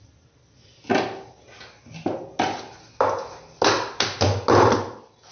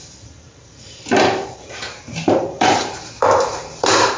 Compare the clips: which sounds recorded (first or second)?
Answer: first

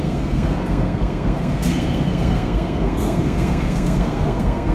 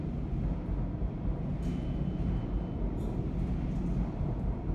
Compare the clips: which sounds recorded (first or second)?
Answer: second